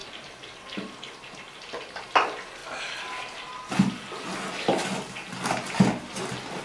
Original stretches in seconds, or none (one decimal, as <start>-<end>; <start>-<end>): 0.0-6.6